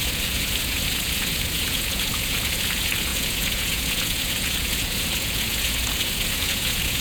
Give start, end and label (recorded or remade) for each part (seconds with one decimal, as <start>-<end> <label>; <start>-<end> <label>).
0.0-7.0 remade